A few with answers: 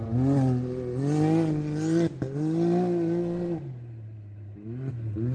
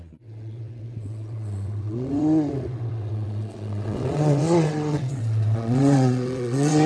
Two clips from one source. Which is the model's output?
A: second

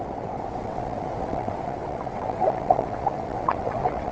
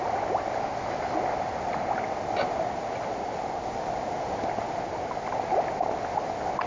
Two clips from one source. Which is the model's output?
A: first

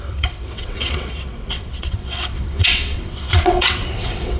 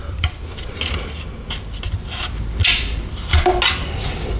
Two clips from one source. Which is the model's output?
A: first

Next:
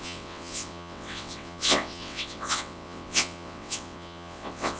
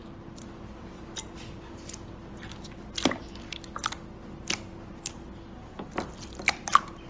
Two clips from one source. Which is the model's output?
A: first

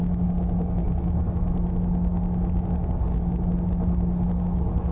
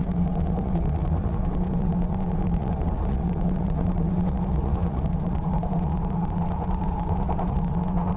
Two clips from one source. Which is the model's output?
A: second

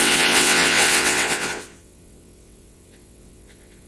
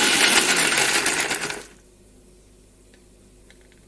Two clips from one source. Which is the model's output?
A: first